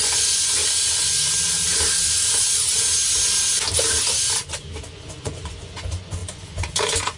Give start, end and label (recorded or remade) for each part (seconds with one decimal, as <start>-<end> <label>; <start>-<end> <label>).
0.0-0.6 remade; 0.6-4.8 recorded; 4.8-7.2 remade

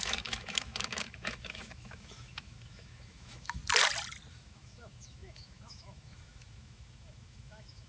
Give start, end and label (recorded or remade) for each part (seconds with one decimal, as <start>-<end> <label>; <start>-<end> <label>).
0.0-3.6 remade; 3.6-4.3 recorded; 4.3-7.9 remade

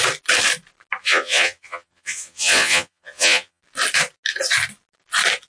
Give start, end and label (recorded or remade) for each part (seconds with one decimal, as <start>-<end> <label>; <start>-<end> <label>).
0.0-1.0 recorded; 1.0-3.6 remade; 3.6-5.5 recorded

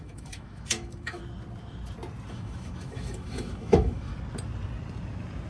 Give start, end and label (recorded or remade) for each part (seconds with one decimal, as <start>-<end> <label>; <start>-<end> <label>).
0.0-1.2 remade; 1.2-2.3 recorded; 2.3-4.1 remade; 4.1-5.5 recorded